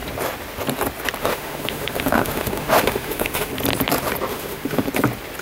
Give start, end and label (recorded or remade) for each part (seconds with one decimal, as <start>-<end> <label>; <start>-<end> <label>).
0.0-1.2 recorded; 1.2-3.5 remade; 3.5-4.3 recorded; 4.3-4.9 remade; 4.9-5.4 recorded